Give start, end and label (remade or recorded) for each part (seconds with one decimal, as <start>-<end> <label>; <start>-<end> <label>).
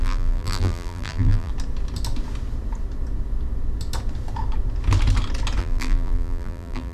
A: 0.0-1.5 remade; 1.5-5.6 recorded; 5.6-6.9 remade